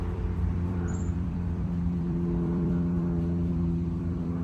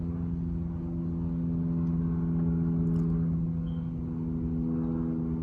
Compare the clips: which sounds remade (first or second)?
first